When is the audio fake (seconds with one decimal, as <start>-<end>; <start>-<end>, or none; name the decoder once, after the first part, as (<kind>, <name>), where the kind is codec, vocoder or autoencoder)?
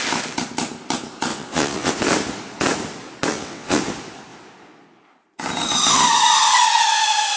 1.3-1.9 (vocoder, WaveNeXt); 3.3-3.8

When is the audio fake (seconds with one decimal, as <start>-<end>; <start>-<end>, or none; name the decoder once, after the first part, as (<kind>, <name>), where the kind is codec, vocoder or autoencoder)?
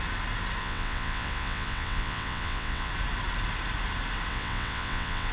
0.6-2.9 (vocoder, WaveNeXt); 4.3-5.3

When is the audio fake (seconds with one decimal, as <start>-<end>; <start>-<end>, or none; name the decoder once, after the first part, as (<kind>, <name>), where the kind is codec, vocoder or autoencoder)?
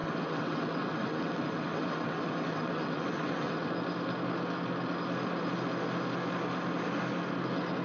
0.0-3.7 (vocoder, WaveNeXt)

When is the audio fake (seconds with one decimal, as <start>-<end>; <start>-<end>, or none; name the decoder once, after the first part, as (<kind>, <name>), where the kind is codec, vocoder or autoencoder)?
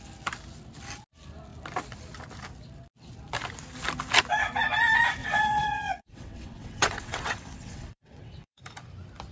5.2-8.6 (vocoder, WaveNeXt)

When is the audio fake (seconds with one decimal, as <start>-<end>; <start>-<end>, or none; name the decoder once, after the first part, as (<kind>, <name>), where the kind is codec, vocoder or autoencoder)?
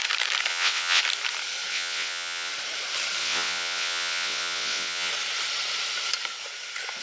0.5-1.0 (vocoder, WaveNeXt); 1.7-2.5; 3.2-5.1